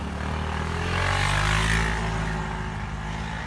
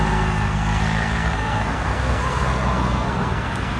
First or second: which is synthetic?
second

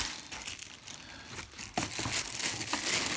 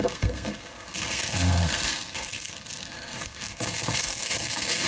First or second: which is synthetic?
second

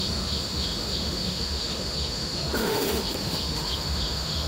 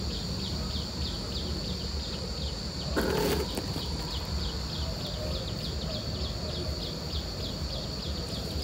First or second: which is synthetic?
first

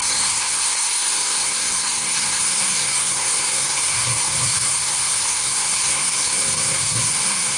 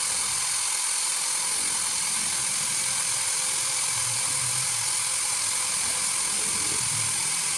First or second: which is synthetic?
first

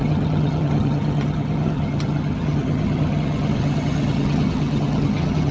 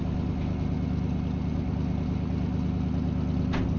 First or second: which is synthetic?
first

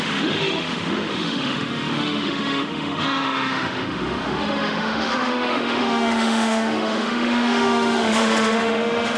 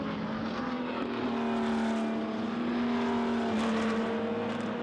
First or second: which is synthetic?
first